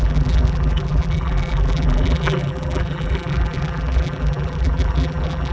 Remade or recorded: remade